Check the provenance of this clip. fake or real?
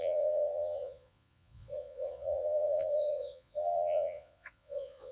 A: fake